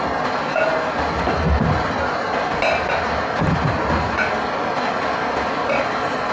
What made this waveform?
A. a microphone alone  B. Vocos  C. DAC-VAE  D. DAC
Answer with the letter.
A